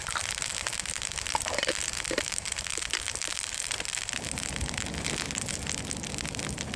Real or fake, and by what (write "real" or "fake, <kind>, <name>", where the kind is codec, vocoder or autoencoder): real